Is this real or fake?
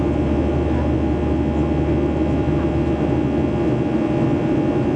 real